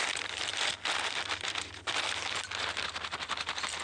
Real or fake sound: real